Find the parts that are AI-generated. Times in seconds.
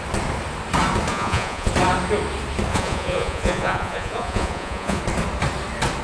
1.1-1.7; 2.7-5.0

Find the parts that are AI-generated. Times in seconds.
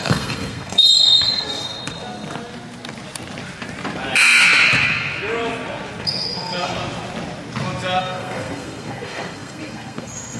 0.0-1.7; 6.0-6.8; 8.0-10.4